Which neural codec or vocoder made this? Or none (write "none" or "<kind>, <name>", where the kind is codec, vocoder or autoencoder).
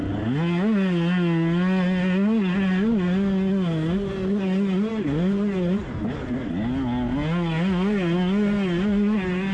none